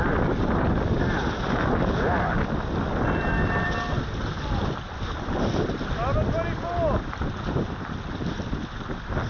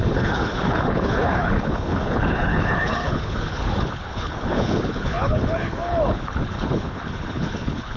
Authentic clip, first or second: first